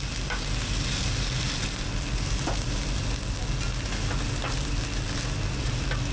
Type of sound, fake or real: real